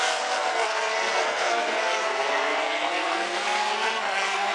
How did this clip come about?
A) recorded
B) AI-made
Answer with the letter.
B